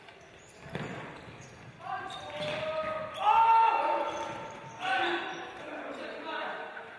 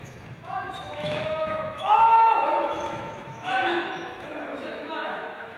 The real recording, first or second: first